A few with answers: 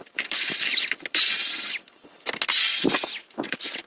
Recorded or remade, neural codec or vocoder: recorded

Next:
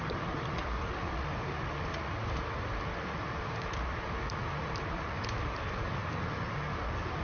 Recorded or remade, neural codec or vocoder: recorded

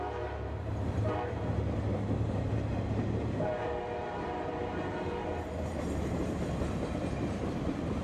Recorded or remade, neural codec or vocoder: remade, vocoder, BigVGAN v2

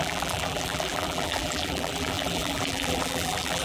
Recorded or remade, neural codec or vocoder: remade, vocoder, BigVGAN v2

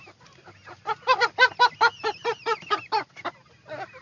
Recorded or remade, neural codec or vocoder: recorded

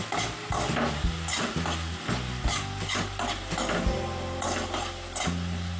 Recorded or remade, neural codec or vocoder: recorded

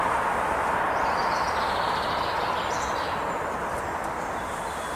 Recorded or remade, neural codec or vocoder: recorded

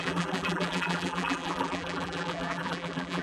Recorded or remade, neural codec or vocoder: remade, vocoder, BigVGAN v2